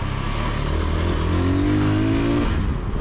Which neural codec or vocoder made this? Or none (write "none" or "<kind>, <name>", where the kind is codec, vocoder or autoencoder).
none